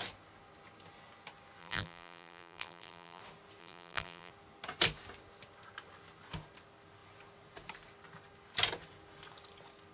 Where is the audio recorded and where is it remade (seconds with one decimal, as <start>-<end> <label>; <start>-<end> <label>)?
0.0-1.6 recorded; 1.6-3.2 remade; 3.2-3.6 recorded; 3.6-4.3 remade; 4.3-9.9 recorded